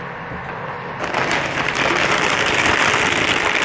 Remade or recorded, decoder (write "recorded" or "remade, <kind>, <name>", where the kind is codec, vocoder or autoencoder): recorded